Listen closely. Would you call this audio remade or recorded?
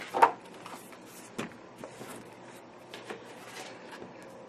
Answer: recorded